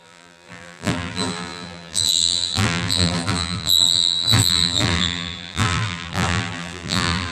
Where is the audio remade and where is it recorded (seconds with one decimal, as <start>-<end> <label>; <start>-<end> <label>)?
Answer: 0.0-7.3 remade